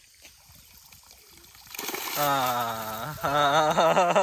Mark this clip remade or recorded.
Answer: recorded